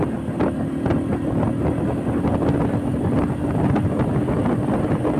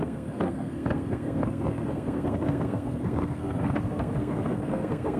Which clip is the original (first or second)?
first